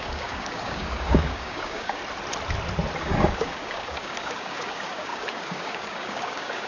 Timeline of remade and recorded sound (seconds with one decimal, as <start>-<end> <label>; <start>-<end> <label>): 0.0-2.0 remade; 2.0-3.0 recorded; 3.0-6.7 remade